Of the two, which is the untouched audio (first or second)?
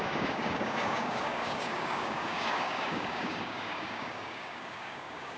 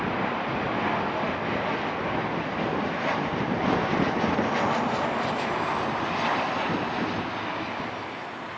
second